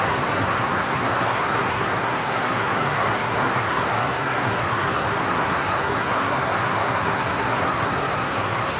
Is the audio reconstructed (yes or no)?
yes